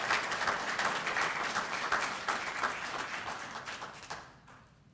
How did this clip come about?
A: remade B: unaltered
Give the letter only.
B